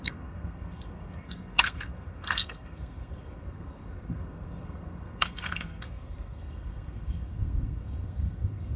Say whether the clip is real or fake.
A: fake